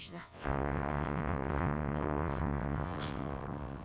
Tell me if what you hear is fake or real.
fake